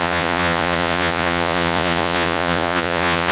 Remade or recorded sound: remade